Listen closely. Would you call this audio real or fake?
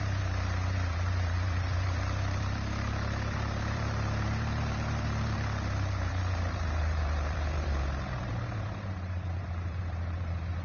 fake